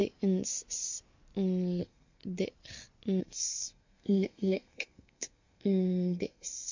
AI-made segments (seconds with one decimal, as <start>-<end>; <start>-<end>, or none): 1.8-2.2; 3.2-6.7